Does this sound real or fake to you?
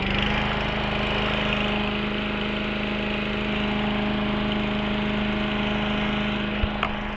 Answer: real